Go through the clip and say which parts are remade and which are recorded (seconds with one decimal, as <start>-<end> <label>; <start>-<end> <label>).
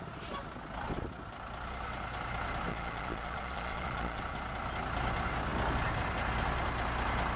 0.0-2.7 recorded; 2.7-4.2 remade; 4.2-7.4 recorded